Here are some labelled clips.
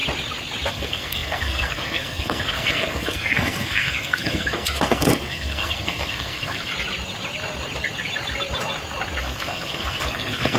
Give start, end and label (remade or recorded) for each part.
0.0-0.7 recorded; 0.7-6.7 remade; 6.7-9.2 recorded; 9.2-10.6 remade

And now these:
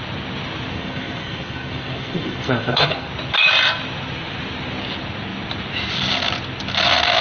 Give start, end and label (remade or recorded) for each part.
0.0-0.7 recorded; 0.7-3.1 remade; 3.1-7.2 recorded

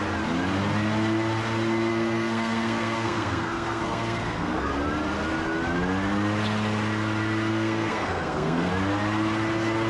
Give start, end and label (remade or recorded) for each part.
0.0-1.9 recorded; 1.9-4.7 remade; 4.7-7.5 recorded; 7.5-8.7 remade; 8.7-9.9 recorded

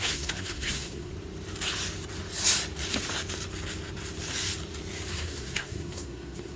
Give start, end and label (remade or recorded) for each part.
0.0-1.1 remade; 1.1-5.1 recorded; 5.1-6.6 remade

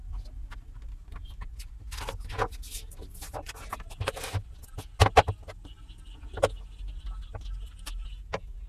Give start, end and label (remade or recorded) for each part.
0.0-8.7 recorded